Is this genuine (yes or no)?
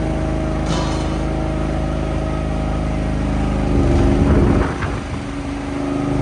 yes